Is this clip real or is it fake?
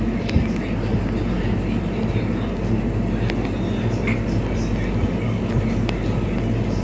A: real